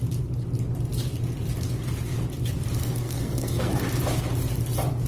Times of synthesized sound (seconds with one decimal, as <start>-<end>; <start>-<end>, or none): 2.8-3.7